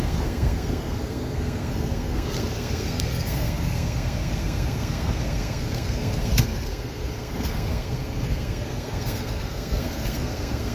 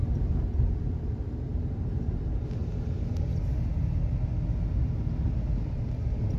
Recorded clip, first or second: second